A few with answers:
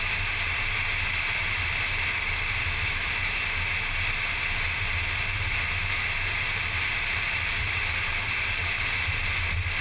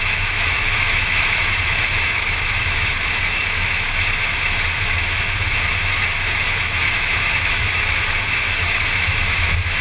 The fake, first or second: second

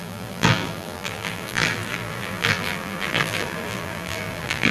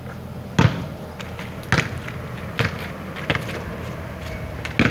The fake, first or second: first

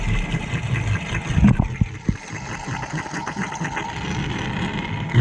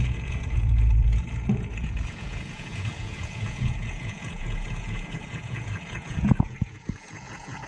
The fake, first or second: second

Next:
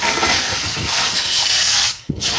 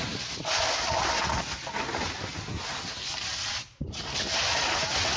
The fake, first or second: first